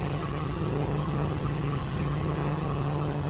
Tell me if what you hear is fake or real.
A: fake